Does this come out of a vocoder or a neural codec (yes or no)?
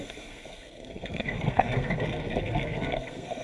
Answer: yes